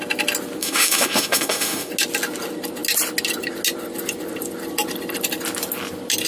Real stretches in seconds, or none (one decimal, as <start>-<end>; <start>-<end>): 0.0-0.6; 1.9-6.3